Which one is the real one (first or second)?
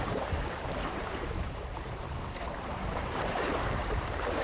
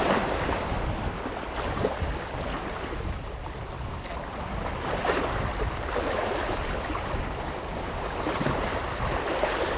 second